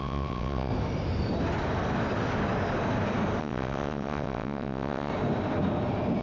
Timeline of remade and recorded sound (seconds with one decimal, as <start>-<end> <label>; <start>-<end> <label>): 0.0-0.7 remade; 0.7-3.4 recorded; 3.4-5.1 remade; 5.1-6.2 recorded

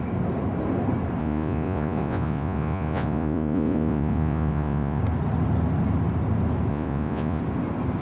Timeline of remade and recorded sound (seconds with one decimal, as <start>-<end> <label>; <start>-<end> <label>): 0.0-1.2 recorded; 1.2-5.0 remade; 5.0-6.7 recorded; 6.7-7.4 remade; 7.4-8.0 recorded